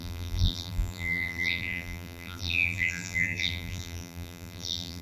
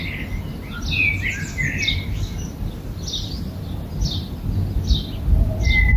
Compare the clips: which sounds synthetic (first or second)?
first